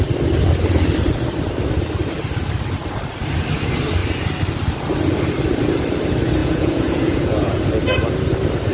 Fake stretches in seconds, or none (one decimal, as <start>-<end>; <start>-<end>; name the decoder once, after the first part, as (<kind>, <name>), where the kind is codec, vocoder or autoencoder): 6.4-7.7 (vocoder, Vocos)